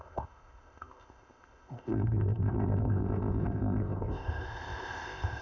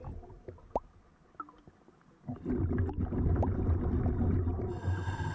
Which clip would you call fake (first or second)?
first